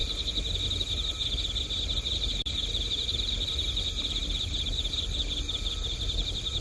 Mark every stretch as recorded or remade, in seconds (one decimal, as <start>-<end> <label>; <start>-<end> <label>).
0.0-6.6 recorded